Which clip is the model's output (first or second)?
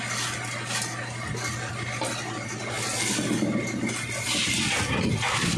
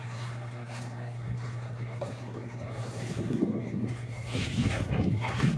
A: second